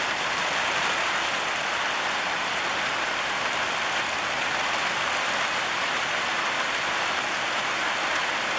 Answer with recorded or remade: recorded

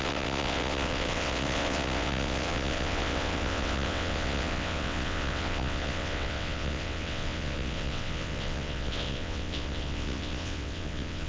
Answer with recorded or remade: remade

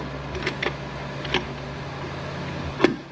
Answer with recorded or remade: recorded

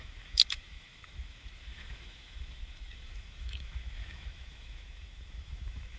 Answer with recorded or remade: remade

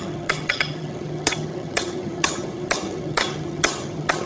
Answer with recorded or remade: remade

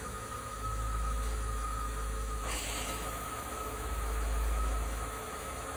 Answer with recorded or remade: remade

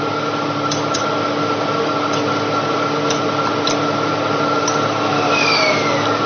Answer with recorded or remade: recorded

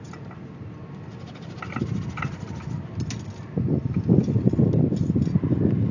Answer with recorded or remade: recorded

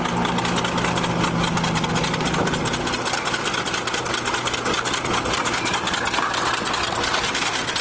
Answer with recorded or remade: recorded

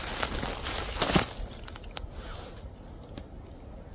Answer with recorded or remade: recorded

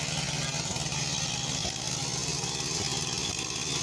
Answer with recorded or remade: recorded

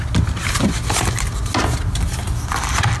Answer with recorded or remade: recorded